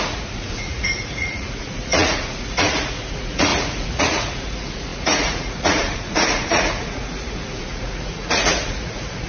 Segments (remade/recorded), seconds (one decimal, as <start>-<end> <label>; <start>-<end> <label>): 0.0-9.3 remade